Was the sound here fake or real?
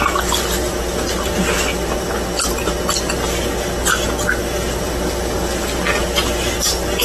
real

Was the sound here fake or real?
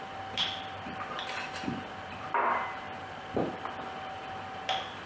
fake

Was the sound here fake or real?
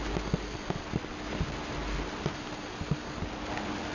real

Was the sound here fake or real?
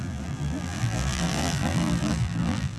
fake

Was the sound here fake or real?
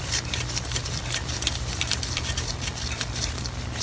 fake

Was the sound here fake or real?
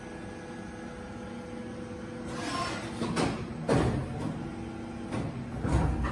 real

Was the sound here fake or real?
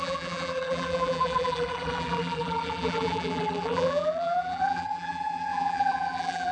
fake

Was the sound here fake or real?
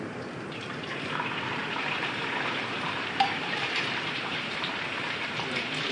fake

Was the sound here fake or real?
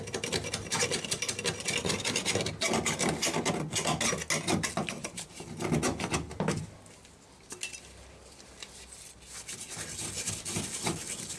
real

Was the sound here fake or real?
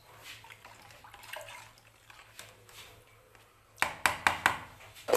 real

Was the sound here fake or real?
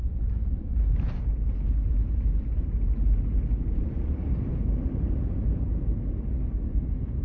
fake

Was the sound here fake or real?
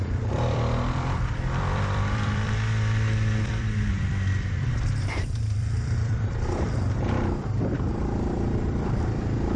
fake